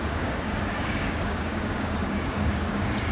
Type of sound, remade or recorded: remade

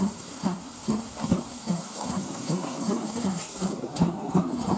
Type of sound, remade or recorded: remade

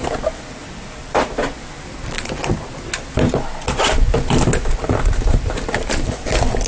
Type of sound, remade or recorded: recorded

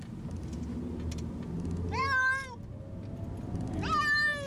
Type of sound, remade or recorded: recorded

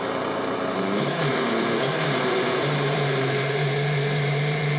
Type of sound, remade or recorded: remade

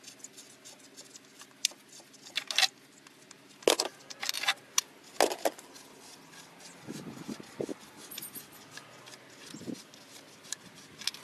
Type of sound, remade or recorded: recorded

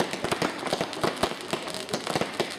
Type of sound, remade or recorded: recorded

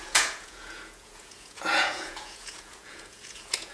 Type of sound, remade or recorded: remade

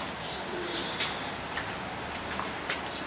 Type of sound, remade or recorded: recorded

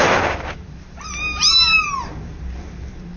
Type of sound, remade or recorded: remade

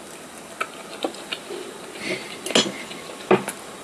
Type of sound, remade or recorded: recorded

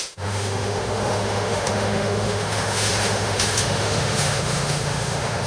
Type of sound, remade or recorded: remade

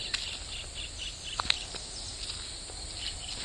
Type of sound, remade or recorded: recorded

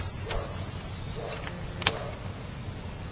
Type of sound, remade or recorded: recorded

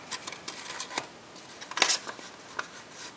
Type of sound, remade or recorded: recorded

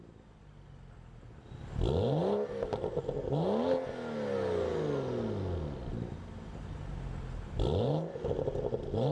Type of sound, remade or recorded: recorded